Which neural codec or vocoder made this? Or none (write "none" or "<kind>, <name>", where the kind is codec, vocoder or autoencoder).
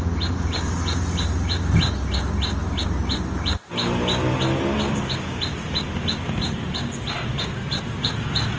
none